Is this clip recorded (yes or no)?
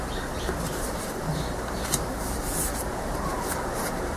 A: no